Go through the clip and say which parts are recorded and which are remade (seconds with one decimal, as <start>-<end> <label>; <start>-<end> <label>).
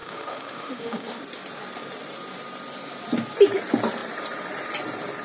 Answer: 0.0-1.2 remade; 1.2-5.2 recorded